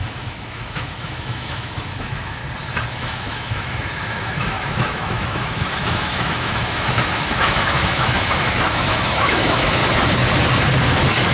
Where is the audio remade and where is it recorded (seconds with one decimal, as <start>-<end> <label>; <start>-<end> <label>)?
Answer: 0.0-2.4 remade; 2.4-2.9 recorded; 2.9-9.8 remade; 9.8-11.3 recorded